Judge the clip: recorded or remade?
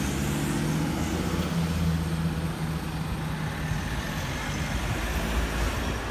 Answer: recorded